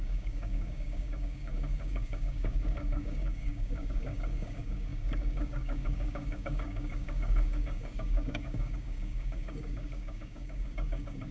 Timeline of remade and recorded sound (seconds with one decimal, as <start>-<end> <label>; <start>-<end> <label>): 0.0-11.3 remade